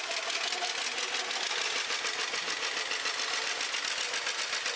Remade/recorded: recorded